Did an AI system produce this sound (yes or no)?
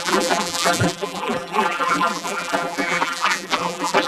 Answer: yes